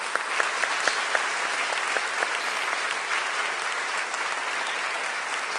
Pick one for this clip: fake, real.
real